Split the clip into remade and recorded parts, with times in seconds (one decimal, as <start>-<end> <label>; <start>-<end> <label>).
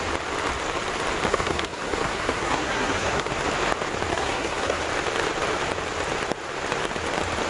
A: 0.0-1.3 recorded; 1.3-3.3 remade; 3.3-4.1 recorded; 4.1-4.8 remade; 4.8-7.5 recorded